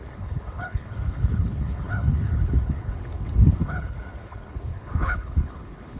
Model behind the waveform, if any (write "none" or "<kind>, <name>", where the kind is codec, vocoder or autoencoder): codec, HILCodec